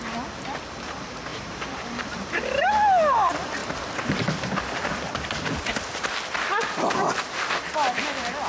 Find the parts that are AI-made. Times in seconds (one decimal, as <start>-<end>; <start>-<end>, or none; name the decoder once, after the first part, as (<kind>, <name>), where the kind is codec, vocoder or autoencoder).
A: 1.3-2.7 (vocoder, BigVGAN v2)